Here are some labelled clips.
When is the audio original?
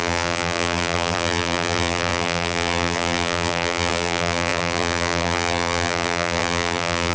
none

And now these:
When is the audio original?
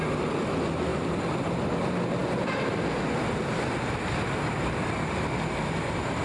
0.0-0.9; 1.6-6.2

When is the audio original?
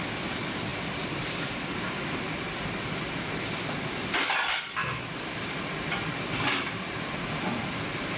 none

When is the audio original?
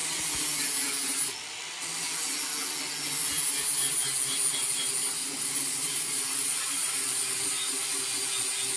0.0-5.2; 8.0-8.8